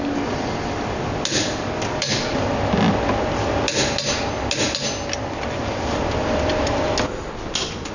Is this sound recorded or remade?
recorded